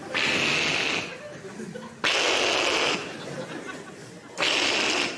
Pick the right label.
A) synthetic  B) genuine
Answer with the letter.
B